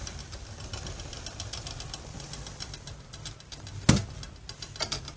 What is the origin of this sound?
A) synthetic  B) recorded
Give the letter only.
B